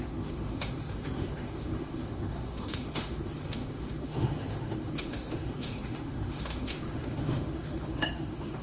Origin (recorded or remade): remade